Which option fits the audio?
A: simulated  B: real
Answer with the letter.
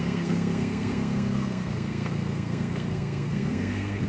A